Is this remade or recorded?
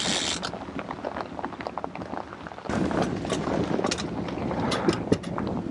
recorded